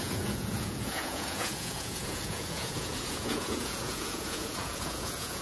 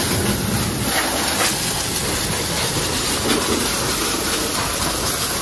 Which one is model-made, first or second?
first